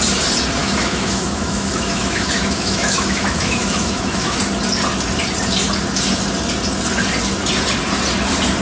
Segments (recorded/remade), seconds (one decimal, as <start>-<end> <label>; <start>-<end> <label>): 0.0-0.6 recorded; 0.6-4.4 remade; 4.4-8.6 recorded